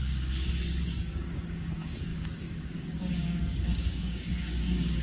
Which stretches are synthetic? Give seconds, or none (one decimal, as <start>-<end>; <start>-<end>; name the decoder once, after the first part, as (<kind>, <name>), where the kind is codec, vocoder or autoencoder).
0.0-5.0 (codec, DAC)